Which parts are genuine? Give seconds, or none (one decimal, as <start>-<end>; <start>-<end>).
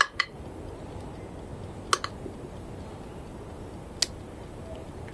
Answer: 0.0-5.1